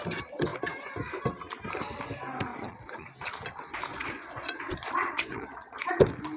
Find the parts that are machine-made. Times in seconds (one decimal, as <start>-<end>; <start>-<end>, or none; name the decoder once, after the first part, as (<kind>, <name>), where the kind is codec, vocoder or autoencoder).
2.5-3.1 (vocoder, Vocos); 3.9-6.0